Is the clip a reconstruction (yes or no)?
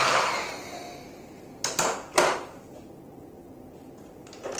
no